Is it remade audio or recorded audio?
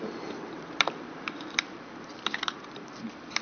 remade